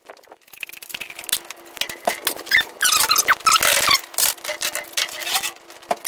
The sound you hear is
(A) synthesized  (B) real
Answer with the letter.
B